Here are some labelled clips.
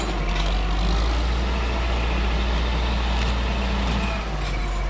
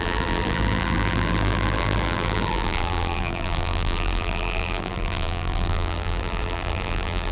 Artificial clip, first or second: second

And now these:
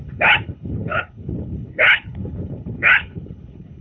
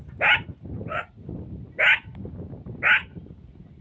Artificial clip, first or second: first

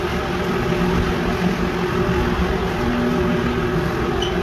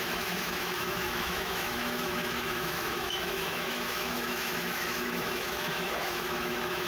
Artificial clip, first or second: second